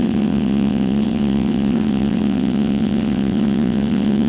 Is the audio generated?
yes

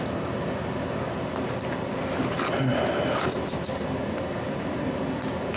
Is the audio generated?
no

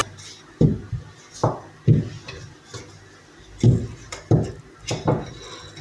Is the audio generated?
no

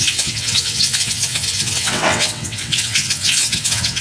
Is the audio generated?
yes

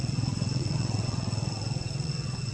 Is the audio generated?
yes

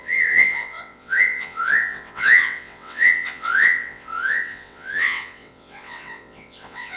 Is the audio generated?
yes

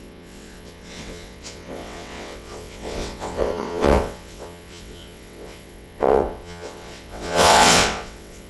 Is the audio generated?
yes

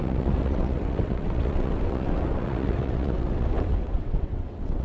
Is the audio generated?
yes